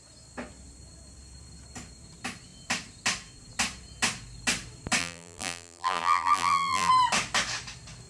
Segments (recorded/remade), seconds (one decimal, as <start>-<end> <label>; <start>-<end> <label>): 0.0-5.0 recorded; 5.0-6.9 remade; 6.9-8.1 recorded